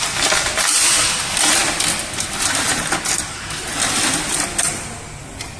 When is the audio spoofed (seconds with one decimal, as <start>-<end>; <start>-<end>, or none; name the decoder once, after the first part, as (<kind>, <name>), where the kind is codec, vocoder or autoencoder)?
none